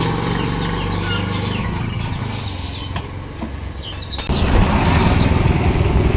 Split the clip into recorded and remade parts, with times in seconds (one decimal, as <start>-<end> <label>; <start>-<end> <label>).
0.0-1.6 recorded; 1.6-2.2 remade; 2.2-6.2 recorded